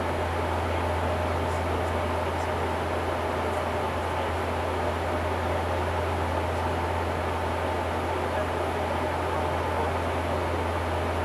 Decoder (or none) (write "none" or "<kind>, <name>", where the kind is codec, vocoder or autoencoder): none